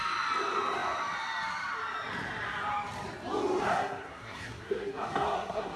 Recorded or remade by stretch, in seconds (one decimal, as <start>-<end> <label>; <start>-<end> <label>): 0.0-3.7 recorded; 3.7-5.8 remade